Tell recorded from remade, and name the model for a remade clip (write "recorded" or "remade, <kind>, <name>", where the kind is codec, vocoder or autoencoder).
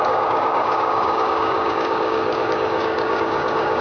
remade, codec, DAC